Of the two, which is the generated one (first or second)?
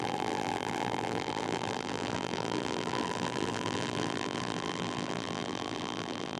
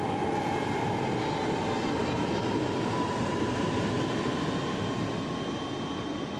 first